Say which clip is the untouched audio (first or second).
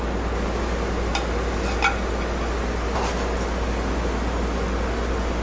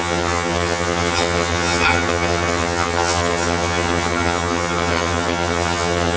first